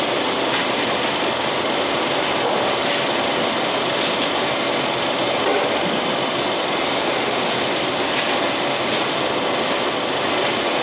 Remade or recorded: recorded